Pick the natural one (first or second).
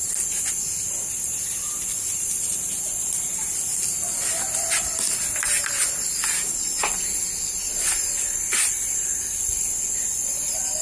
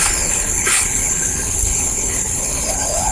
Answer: first